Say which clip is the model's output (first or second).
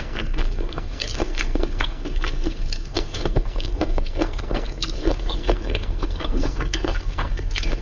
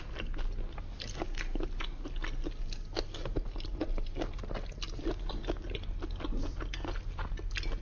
first